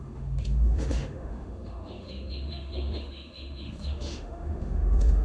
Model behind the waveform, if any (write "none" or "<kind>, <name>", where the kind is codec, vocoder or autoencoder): autoencoder, DAC-VAE